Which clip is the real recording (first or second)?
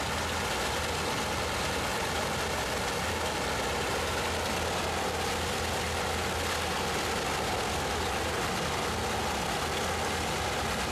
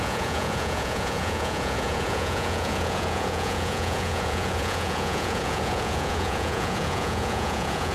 first